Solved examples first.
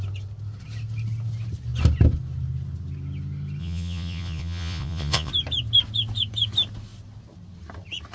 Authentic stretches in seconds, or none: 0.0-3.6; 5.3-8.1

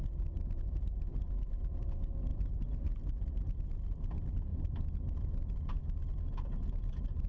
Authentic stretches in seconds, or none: 0.0-7.3